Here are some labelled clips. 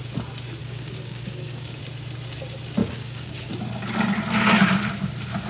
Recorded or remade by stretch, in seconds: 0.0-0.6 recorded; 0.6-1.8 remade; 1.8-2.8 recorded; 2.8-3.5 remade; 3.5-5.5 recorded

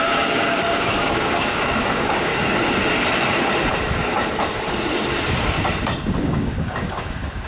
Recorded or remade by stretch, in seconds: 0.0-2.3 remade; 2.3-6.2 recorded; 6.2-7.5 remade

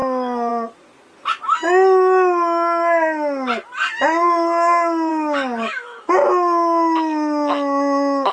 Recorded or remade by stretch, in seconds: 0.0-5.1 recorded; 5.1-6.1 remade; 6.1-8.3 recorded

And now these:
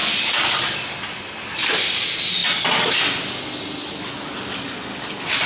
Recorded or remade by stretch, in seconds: 0.0-5.5 recorded

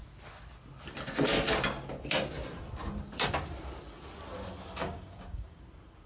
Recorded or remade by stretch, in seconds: 0.0-4.8 recorded; 4.8-5.6 remade; 5.6-6.1 recorded

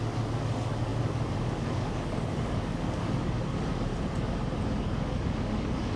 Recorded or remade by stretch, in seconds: 0.0-3.9 remade; 3.9-4.8 recorded; 4.8-6.0 remade